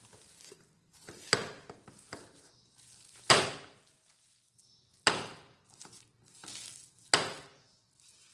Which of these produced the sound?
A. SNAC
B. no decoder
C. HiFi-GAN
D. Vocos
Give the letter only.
B